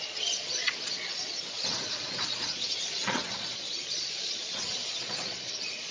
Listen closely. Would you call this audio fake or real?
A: fake